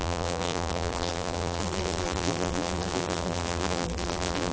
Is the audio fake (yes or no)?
yes